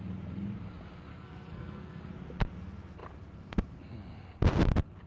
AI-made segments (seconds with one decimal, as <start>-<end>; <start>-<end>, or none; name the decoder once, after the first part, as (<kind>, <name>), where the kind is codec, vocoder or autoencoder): 1.1-2.0 (codec, SNAC)